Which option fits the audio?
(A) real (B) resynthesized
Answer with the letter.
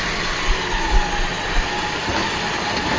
A